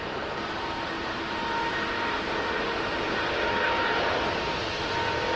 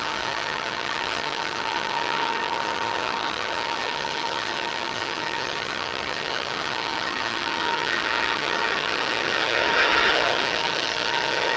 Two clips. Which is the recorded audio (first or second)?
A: first